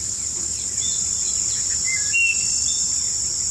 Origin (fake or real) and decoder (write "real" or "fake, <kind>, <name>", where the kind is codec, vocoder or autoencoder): real